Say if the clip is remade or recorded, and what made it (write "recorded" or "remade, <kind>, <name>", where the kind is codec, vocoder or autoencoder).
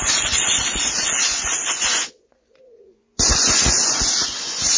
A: remade, vocoder, Vocos